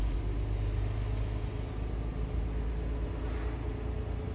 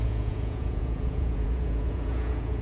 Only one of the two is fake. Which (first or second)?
second